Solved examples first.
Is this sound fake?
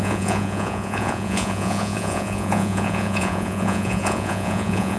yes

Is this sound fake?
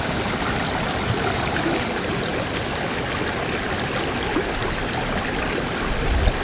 no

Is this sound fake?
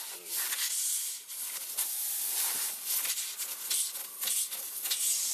no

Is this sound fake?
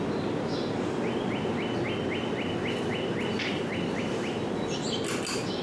no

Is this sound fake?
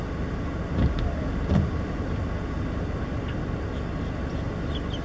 no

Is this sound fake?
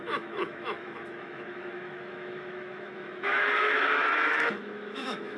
yes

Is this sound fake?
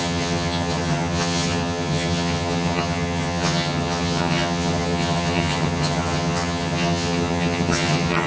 yes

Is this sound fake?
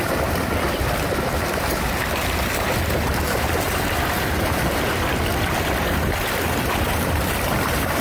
yes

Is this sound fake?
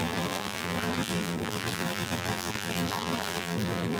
yes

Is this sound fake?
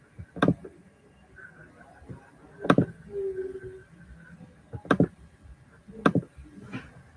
no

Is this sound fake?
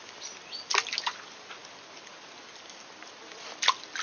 no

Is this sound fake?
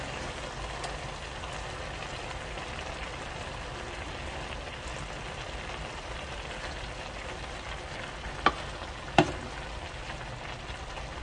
no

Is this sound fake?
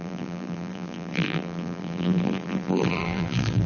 yes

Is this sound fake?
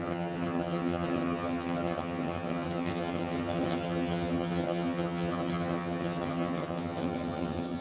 yes